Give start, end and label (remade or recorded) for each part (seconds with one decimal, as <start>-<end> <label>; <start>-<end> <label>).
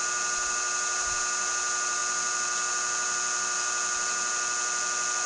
0.0-5.3 recorded